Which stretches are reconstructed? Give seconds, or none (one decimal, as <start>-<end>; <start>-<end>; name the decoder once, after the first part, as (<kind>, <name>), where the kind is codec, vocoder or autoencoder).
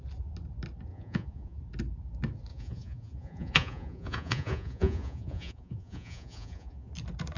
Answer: 0.9-1.6 (vocoder, Vocos); 2.5-6.9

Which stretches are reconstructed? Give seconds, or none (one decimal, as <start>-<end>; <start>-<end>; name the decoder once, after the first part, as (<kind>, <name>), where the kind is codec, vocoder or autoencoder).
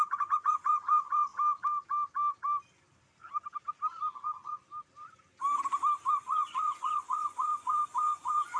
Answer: 0.0-1.3 (vocoder, Vocos); 6.1-8.6